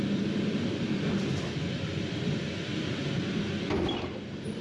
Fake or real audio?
fake